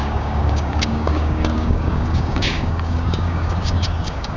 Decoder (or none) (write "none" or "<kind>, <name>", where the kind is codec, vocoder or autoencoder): codec, DAC